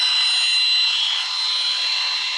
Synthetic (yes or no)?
no